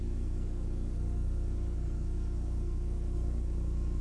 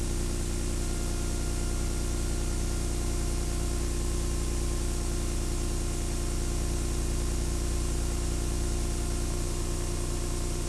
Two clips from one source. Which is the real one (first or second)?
second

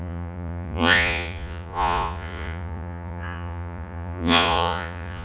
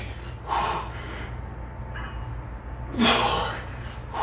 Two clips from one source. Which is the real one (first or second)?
second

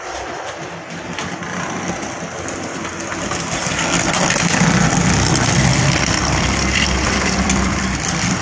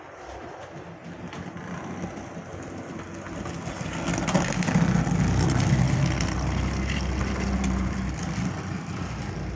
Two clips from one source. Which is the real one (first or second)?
second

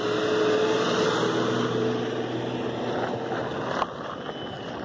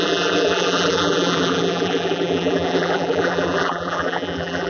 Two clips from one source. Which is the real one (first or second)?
first